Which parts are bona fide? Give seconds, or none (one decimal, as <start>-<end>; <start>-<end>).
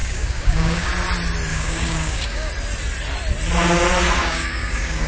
0.9-1.5; 2.5-4.2